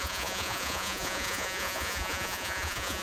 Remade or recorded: remade